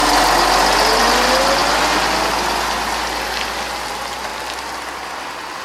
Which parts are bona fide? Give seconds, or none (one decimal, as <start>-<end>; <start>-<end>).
0.0-5.6